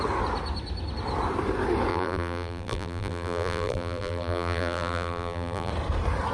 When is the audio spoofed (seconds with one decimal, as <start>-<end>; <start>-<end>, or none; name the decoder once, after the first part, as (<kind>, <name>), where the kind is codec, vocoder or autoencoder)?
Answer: 1.9-5.7 (vocoder, BigVGAN v2)